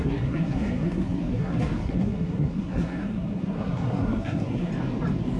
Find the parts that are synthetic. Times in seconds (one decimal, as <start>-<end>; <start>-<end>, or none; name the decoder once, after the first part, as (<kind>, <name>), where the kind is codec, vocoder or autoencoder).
0.0-4.7 (codec, SNAC)